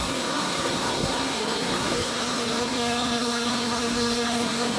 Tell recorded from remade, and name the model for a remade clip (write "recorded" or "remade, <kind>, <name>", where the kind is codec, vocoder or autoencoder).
remade, codec, SNAC